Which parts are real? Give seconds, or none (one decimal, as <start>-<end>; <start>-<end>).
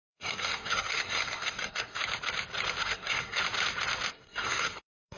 2.0-2.8; 3.4-4.1